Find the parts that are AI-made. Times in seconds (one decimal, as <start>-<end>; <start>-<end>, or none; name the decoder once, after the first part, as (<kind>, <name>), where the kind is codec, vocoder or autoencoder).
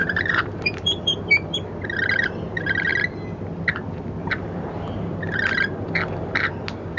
0.0-1.5 (vocoder, BigVGAN v2); 4.2-6.5